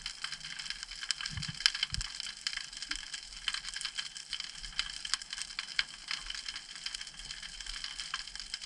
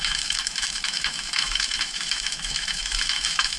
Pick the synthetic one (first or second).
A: second